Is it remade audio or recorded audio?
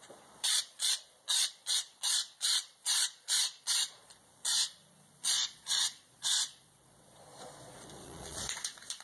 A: remade